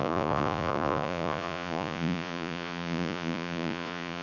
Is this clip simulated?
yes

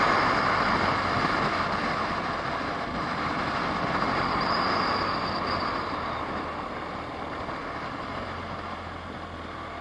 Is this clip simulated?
no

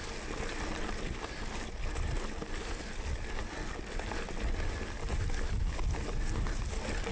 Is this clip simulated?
no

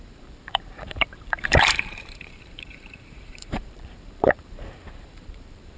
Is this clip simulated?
yes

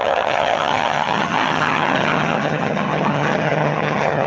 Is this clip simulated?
yes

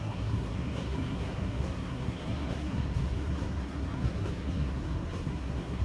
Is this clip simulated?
yes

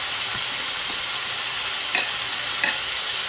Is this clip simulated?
no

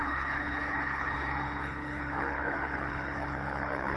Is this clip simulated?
yes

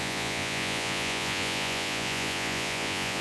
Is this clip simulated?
yes